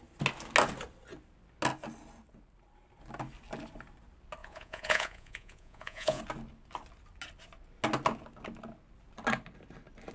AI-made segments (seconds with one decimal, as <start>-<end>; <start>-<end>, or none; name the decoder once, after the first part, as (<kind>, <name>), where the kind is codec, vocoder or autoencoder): 4.4-6.2 (vocoder, Vocos)